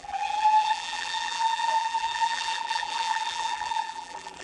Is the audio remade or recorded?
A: remade